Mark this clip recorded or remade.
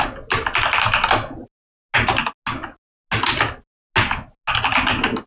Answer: recorded